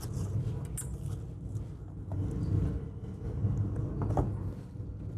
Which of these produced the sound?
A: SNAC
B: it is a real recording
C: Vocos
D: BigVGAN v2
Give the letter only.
B